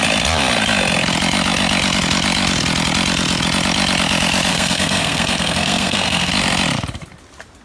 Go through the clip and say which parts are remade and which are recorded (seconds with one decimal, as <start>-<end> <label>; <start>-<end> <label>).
0.0-4.5 recorded; 4.5-6.3 remade; 6.3-7.6 recorded